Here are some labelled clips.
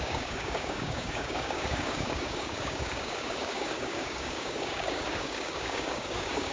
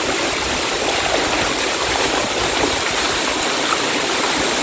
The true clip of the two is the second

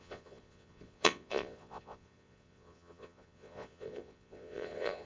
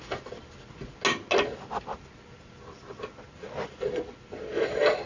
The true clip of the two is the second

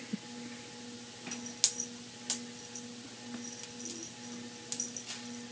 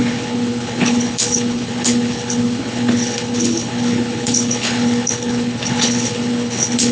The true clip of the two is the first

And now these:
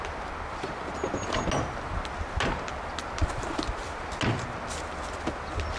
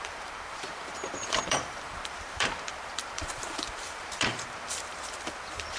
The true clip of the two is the first